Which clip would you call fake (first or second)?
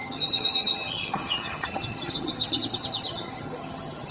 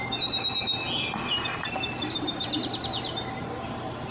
first